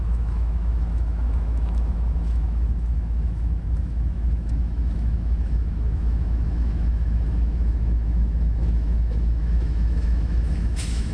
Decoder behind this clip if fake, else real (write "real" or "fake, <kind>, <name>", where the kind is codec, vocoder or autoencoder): fake, autoencoder, DAC-VAE